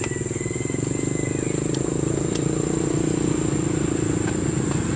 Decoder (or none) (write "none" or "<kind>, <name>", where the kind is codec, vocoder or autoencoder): none